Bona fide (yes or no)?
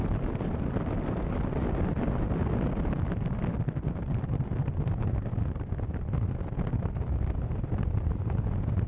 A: yes